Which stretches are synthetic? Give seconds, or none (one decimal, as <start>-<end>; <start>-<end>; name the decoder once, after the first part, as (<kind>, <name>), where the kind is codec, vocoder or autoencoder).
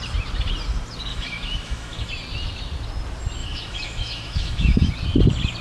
1.1-2.1 (autoencoder, DAC-VAE); 3.4-4.9